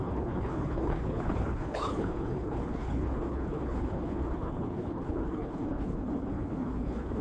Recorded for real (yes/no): no